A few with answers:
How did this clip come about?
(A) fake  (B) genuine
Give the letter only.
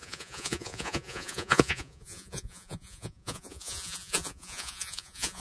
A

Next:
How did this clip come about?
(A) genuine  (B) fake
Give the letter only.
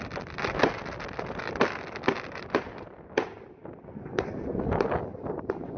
A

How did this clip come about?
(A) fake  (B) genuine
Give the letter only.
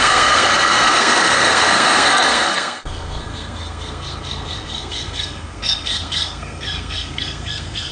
A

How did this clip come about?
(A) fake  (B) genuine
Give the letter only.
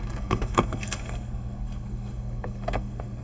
A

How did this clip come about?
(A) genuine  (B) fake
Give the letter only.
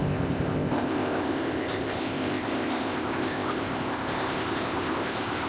B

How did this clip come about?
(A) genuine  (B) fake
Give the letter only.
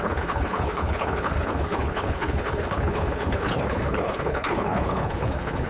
B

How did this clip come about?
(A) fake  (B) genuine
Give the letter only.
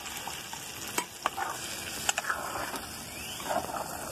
B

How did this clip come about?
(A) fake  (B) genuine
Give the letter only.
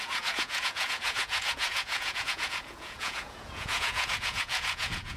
A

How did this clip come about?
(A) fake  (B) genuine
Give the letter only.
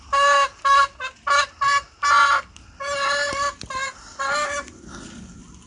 B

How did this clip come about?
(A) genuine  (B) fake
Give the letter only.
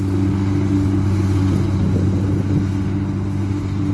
A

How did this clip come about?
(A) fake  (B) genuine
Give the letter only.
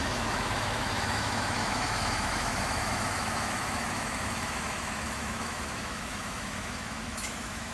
A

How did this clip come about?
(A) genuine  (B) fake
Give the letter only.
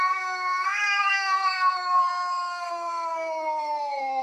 B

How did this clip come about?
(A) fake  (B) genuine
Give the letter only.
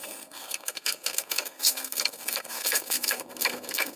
A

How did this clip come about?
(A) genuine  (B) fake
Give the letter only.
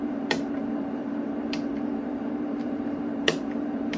B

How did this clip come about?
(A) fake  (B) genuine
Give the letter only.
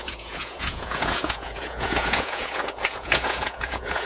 A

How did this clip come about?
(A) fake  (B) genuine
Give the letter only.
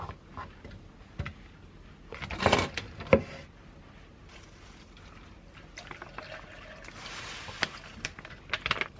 B